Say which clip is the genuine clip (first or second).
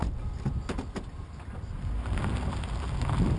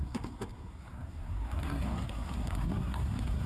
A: first